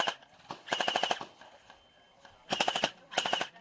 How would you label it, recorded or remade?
recorded